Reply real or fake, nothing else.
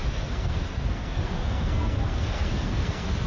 fake